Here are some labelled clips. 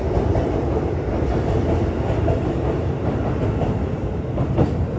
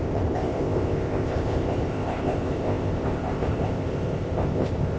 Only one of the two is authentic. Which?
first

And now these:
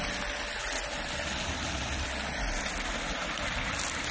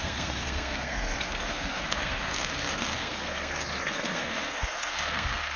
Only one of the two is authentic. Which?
first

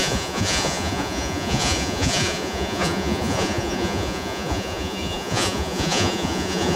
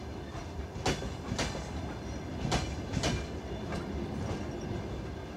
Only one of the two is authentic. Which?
second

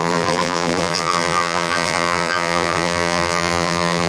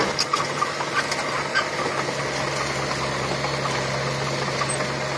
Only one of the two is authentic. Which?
second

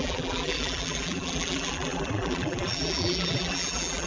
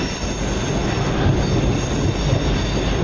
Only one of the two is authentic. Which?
second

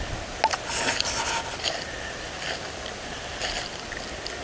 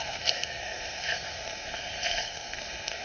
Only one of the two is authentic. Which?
first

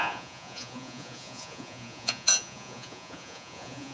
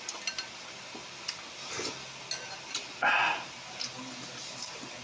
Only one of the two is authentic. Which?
second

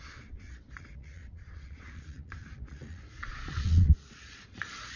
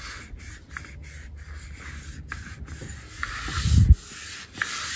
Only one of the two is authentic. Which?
second